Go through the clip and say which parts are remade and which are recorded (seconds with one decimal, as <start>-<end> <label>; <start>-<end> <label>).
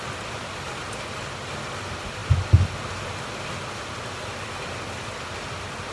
0.0-5.9 recorded